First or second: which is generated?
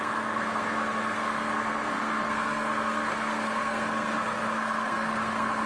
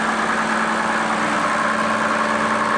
first